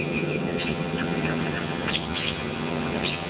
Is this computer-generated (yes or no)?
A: yes